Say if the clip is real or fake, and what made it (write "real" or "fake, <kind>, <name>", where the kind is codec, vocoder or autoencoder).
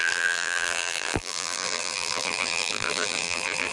fake, vocoder, BigVGAN v2